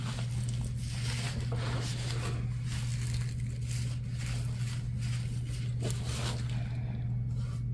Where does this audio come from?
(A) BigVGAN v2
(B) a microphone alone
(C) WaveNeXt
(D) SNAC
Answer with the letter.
B